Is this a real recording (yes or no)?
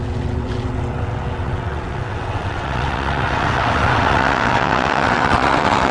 no